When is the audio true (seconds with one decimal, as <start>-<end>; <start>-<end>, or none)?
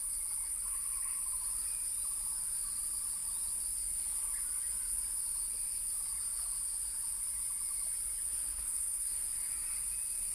0.0-8.5; 9.1-10.3